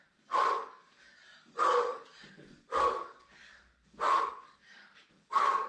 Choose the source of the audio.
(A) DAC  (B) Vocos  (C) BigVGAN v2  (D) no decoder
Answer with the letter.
A